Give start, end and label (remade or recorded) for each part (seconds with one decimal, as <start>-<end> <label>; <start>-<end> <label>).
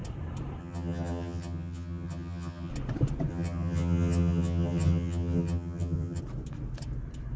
0.0-0.6 recorded; 0.6-2.7 remade; 2.7-3.3 recorded; 3.3-6.2 remade; 6.2-7.4 recorded